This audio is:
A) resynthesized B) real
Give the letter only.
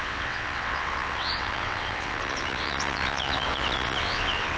A